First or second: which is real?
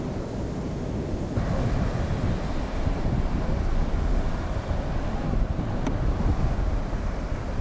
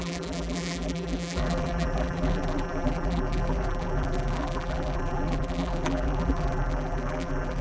first